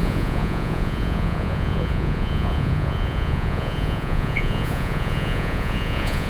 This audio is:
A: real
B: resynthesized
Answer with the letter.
B